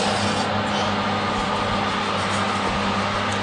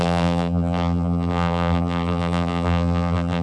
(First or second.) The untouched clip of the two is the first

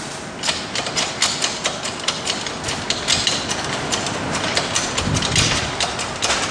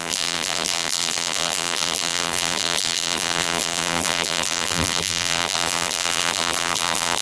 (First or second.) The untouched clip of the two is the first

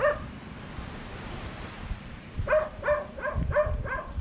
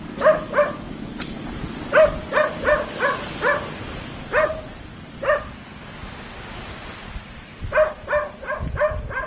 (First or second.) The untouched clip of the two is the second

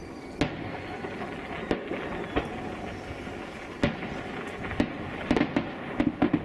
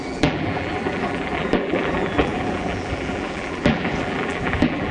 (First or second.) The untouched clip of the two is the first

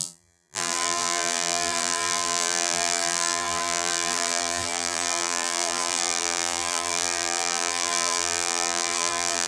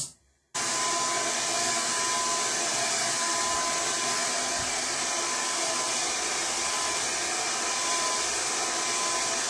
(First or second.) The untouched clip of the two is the second